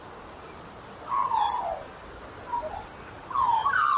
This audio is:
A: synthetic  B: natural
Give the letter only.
B